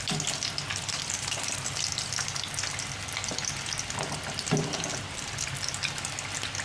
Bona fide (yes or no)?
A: yes